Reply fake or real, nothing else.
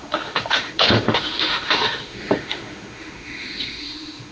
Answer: fake